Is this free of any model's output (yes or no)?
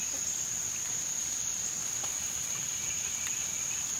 yes